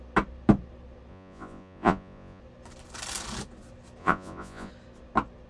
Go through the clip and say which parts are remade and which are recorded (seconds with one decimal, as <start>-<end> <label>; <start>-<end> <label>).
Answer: 0.0-1.1 recorded; 1.1-2.4 remade; 2.4-4.0 recorded; 4.0-4.7 remade; 4.7-5.5 recorded